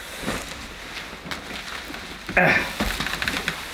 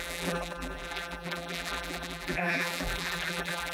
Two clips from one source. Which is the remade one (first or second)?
second